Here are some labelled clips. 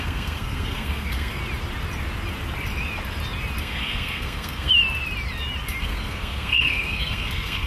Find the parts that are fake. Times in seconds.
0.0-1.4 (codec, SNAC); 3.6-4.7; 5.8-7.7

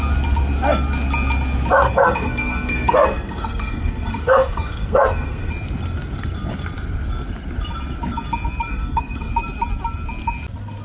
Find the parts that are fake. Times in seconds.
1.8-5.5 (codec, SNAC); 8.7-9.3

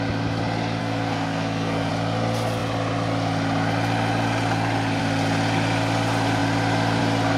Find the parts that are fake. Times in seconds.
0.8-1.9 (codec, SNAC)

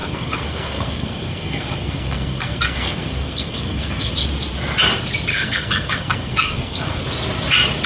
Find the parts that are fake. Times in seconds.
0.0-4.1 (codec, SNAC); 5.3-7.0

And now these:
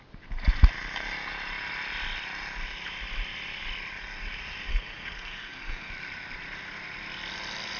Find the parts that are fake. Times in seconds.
4.7-5.9 (codec, SNAC)

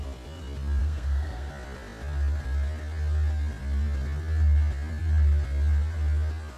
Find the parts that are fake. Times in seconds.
0.8-1.5 (codec, SNAC)

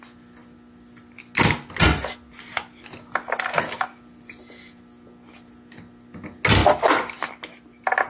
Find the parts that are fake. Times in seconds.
none

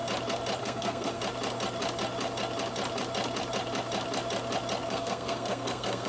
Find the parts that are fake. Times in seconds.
0.6-1.2 (codec, SNAC); 4.9-6.1